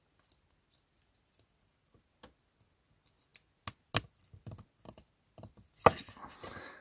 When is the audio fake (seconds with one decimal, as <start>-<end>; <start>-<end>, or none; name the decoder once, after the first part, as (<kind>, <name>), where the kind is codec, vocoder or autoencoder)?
none